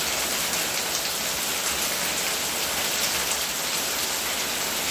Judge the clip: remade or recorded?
recorded